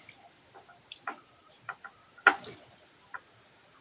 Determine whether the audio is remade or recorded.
recorded